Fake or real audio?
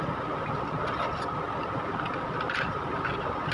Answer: real